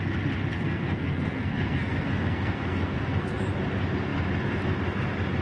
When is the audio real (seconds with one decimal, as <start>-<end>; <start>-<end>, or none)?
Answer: 0.0-0.5; 3.4-5.4